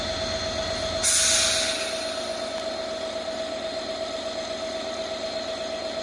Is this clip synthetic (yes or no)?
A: no